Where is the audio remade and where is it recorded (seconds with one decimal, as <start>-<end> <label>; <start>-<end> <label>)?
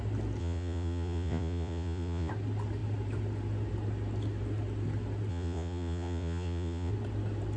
0.0-0.4 recorded; 0.4-2.3 remade; 2.3-5.3 recorded; 5.3-6.9 remade; 6.9-7.6 recorded